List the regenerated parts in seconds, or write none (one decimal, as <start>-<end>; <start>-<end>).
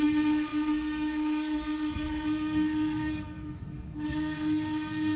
0.0-5.2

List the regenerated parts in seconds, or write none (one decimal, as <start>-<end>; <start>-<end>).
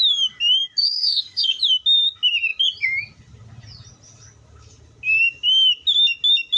0.8-1.6